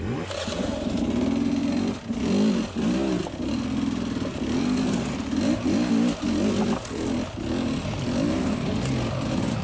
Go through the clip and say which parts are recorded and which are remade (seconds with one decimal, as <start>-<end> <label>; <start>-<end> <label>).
0.0-9.6 recorded